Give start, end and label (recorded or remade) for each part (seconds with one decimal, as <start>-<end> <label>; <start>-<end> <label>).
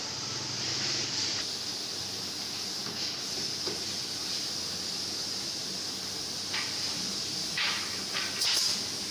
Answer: 0.0-7.4 recorded; 7.4-8.0 remade; 8.0-9.1 recorded